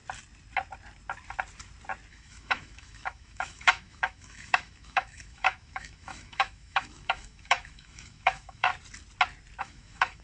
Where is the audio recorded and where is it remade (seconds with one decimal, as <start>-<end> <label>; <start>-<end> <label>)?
0.0-2.1 recorded; 2.1-8.7 remade; 8.7-9.6 recorded; 9.6-10.2 remade